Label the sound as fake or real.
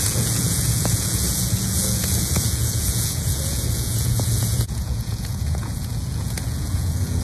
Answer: fake